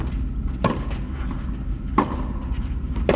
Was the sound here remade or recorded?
recorded